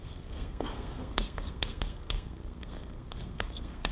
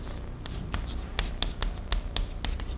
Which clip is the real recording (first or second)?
second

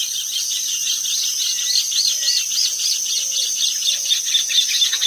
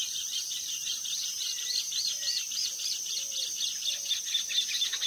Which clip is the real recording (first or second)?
first